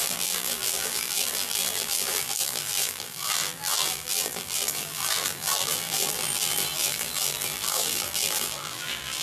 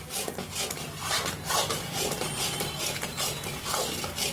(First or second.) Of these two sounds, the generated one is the first